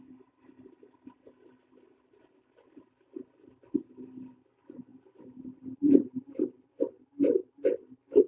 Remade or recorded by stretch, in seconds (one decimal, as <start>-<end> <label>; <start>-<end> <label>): 0.0-2.2 recorded; 2.2-4.3 remade; 4.3-4.9 recorded; 4.9-6.8 remade; 6.8-8.3 recorded